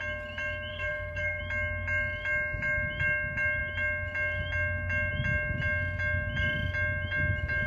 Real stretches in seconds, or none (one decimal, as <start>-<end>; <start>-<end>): 0.0-0.7; 1.4-7.7